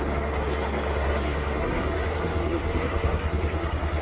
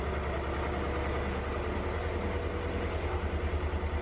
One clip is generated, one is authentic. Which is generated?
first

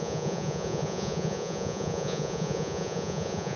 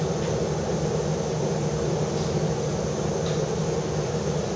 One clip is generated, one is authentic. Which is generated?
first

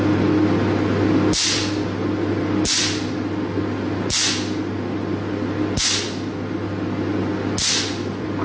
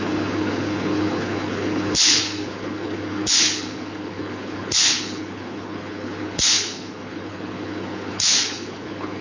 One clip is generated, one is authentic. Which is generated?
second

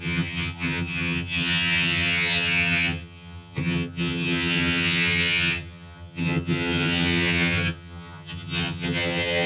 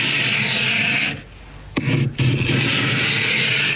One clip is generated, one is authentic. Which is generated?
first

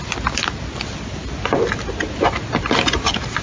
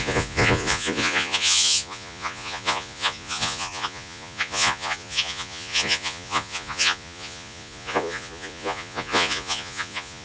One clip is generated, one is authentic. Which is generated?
second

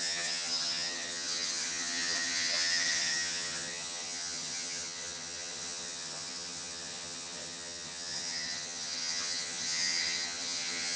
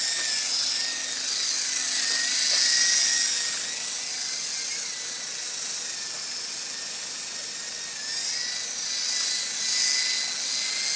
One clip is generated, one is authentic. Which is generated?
first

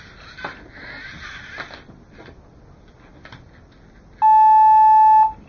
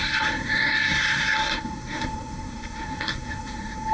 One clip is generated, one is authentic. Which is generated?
second